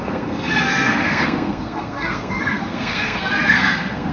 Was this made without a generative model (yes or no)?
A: no